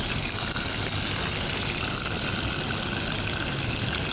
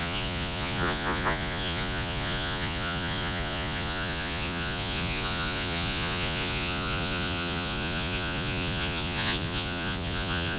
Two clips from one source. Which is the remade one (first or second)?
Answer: second